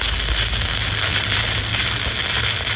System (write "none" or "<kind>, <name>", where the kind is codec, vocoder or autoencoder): none